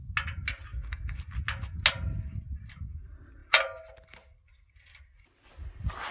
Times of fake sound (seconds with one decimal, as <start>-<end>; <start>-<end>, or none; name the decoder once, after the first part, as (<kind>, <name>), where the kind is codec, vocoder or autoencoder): 0.7-1.2 (codec, DAC)